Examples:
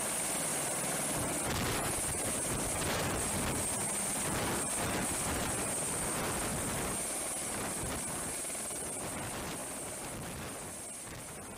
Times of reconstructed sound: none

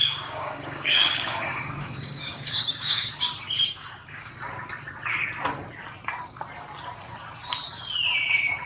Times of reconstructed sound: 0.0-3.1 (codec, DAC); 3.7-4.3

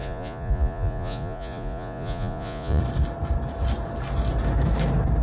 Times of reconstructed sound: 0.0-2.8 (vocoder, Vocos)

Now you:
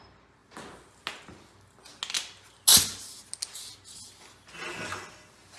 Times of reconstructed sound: none